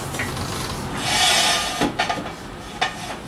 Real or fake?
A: real